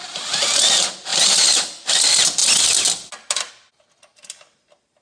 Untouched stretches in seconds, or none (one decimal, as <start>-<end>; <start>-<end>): 0.0-5.0